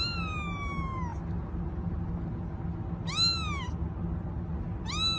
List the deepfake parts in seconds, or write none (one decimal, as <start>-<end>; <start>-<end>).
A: none